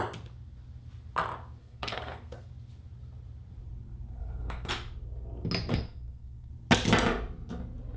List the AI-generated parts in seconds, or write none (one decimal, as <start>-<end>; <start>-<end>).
1.6-2.5; 4.2-4.7; 5.7-6.5